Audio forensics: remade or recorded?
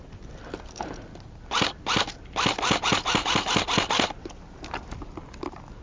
recorded